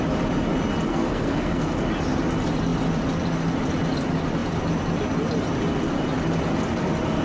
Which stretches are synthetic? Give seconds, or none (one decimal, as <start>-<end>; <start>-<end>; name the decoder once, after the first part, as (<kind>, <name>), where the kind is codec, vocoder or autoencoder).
0.9-1.8 (codec, SNAC)